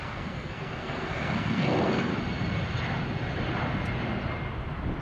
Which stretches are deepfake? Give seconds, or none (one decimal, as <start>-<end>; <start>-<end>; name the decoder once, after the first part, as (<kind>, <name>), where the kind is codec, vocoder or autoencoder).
0.0-2.1 (codec, SNAC)